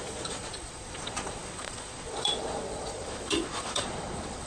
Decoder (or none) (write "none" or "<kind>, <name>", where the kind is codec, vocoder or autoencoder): vocoder, Vocos